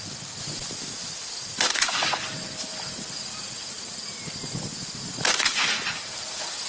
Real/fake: real